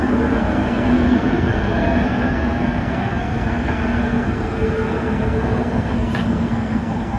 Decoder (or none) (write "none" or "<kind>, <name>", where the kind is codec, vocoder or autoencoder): codec, SNAC